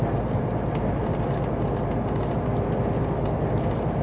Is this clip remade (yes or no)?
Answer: no